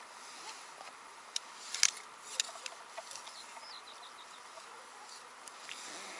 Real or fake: real